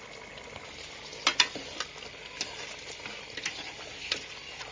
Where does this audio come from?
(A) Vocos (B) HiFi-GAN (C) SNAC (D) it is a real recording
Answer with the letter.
D